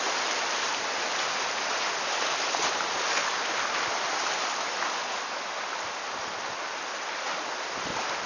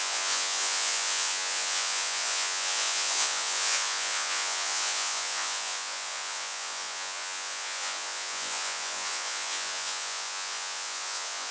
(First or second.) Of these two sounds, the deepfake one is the second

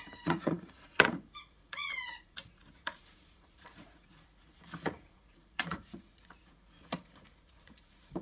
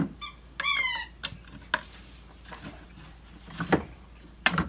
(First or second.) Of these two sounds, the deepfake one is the first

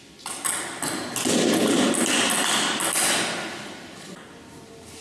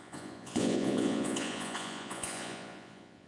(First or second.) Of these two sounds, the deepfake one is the second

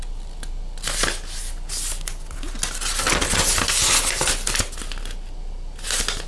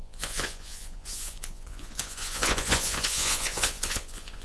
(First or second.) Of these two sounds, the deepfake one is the second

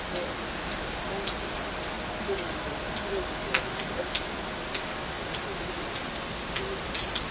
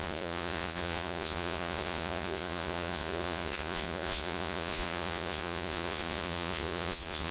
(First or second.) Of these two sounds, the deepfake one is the second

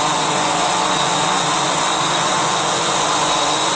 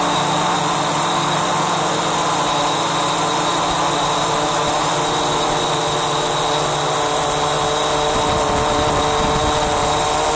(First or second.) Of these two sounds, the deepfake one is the first